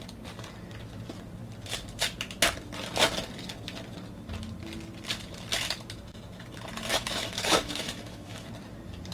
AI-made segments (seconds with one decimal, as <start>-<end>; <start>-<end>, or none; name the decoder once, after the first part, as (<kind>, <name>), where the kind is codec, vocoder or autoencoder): 6.9-8.5 (autoencoder, DAC-VAE)